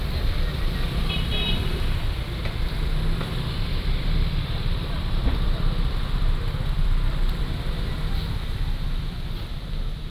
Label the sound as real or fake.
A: fake